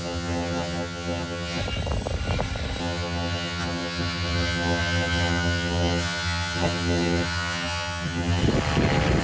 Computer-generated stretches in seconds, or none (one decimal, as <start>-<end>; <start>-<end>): 0.0-1.6; 2.8-8.4